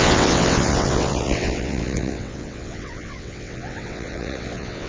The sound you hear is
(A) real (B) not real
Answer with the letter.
B